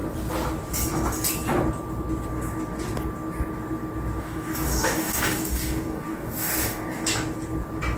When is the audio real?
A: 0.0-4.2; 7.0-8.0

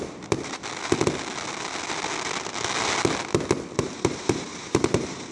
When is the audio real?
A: 0.6-3.8

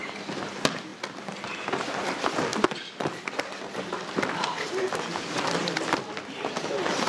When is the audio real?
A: 0.0-0.5

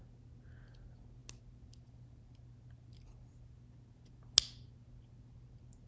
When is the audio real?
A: 0.0-5.9